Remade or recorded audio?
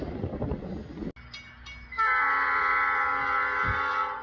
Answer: recorded